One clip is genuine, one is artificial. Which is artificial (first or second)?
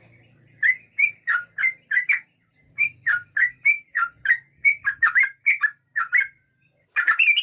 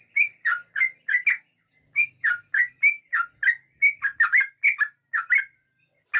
first